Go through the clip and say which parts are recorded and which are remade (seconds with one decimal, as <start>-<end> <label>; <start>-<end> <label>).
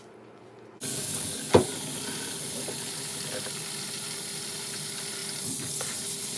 0.0-0.9 recorded; 0.9-1.5 remade; 1.5-6.4 recorded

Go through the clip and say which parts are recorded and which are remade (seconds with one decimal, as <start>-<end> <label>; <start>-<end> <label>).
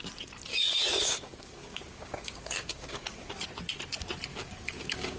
0.0-0.5 recorded; 0.5-3.3 remade; 3.3-4.3 recorded; 4.3-5.2 remade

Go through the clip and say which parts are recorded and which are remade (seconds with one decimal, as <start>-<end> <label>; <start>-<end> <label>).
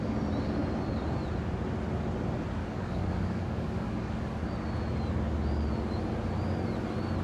0.0-2.6 recorded; 2.6-4.4 remade; 4.4-7.2 recorded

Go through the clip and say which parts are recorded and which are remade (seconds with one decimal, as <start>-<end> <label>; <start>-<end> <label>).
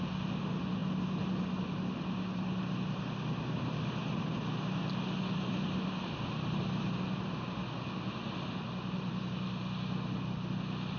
0.0-11.0 recorded